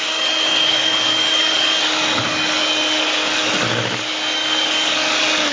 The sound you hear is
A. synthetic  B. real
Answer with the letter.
A